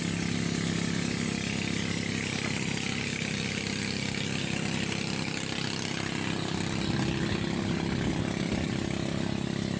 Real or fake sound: real